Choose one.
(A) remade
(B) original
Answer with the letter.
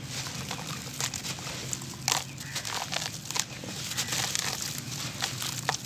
B